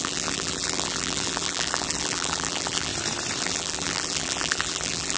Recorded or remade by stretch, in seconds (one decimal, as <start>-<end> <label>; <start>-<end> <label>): 0.0-2.9 remade; 2.9-3.4 recorded; 3.4-5.2 remade